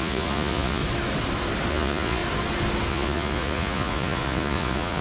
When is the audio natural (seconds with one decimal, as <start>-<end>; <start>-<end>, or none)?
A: 0.8-1.7; 2.2-2.9

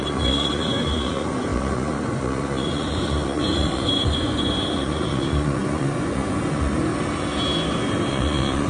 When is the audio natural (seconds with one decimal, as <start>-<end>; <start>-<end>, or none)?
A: 6.9-8.1

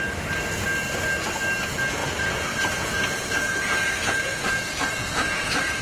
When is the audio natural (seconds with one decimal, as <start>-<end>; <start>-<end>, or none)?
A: 0.0-2.0

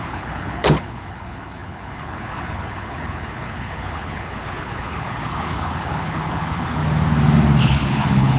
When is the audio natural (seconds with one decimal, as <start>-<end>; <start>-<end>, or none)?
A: 6.8-7.6